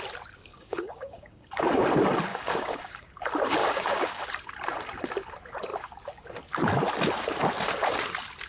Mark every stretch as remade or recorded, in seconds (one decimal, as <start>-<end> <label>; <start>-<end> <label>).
0.0-0.5 recorded; 0.5-1.5 remade; 1.5-2.3 recorded; 2.3-3.1 remade; 3.1-3.6 recorded; 3.6-4.2 remade; 4.2-8.5 recorded